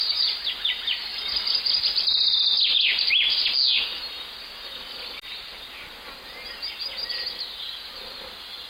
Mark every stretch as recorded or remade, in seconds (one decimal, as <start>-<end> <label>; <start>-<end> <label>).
0.0-8.7 recorded